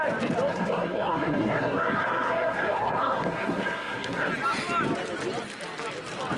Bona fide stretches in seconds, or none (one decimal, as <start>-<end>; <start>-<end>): 0.0-0.5; 4.3-6.4

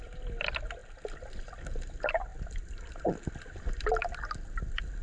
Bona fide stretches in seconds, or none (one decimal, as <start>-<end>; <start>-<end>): 0.0-5.0

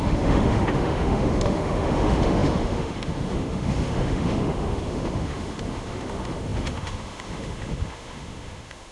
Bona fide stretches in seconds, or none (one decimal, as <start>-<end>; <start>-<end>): none

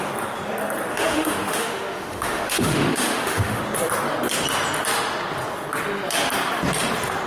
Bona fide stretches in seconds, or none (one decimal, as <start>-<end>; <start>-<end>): 0.0-0.9; 3.6-7.3

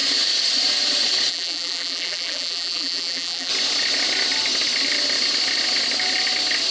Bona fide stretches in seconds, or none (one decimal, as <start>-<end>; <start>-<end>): 0.0-1.3; 3.5-6.7

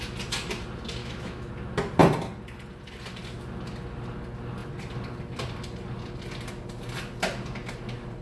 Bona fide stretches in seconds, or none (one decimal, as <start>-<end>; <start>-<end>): 0.0-1.0; 1.5-8.2